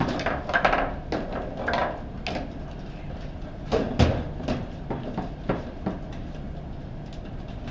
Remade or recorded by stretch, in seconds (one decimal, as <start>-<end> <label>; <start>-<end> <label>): 0.0-7.7 recorded